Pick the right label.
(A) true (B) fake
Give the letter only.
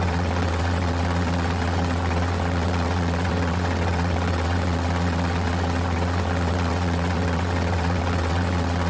B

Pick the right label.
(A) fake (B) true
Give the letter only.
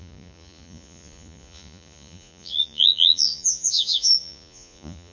A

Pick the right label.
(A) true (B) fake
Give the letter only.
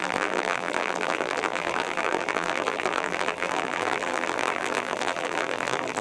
B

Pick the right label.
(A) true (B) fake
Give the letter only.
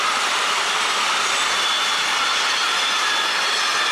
A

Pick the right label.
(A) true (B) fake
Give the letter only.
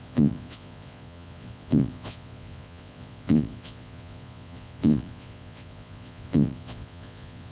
B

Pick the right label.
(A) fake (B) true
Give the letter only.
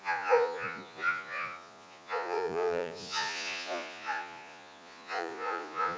A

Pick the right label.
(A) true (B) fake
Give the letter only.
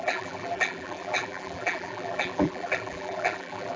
B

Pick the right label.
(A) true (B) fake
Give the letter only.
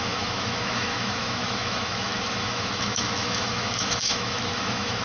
B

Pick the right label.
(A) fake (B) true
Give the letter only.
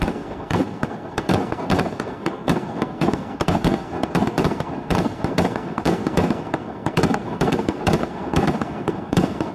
A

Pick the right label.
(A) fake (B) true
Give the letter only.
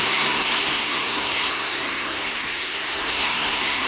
A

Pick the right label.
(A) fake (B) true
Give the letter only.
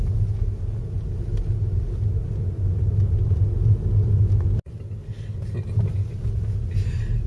B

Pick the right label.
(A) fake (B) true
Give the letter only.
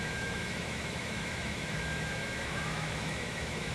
A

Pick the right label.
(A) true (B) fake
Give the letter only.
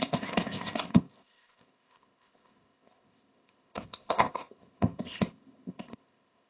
B